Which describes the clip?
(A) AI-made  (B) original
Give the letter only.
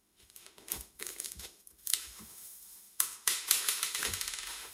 A